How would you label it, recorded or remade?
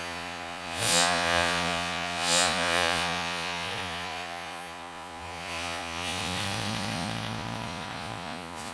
remade